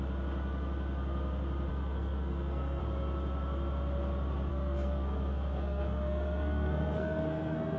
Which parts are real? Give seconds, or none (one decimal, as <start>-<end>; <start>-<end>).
0.0-1.7; 2.8-4.5